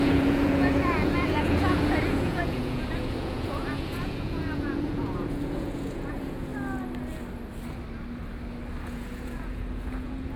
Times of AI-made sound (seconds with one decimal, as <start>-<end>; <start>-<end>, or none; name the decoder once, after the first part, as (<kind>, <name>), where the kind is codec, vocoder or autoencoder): 0.0-6.5 (vocoder, Vocos); 8.8-10.4